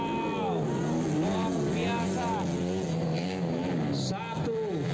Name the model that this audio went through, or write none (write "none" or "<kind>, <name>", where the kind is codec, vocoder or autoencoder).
none